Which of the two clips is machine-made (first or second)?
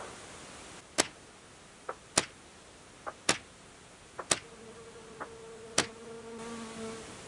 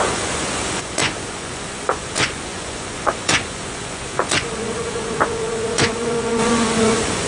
second